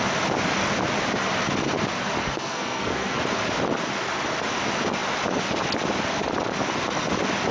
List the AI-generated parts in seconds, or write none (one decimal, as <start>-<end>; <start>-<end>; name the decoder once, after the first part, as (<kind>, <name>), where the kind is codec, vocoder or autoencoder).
2.2-3.2 (codec, SNAC)